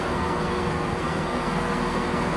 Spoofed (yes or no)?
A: yes